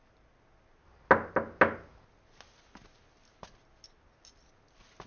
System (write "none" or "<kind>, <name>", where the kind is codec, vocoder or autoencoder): none